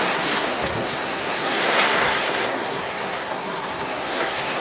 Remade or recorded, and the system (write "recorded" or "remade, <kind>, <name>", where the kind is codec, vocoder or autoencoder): remade, codec, SNAC